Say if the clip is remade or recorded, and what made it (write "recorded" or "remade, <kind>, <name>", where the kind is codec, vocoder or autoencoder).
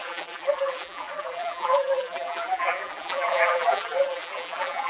remade, vocoder, BigVGAN v2